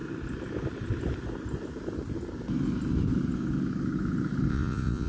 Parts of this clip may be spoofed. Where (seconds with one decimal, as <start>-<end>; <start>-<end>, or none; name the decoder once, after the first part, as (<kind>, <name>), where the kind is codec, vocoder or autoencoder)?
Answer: 4.5-5.1 (vocoder, Vocos)